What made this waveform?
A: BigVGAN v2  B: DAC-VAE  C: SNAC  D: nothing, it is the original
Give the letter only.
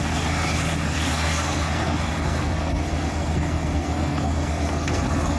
C